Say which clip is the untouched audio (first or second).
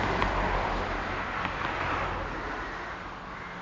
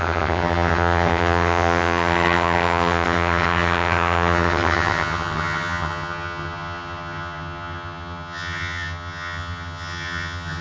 first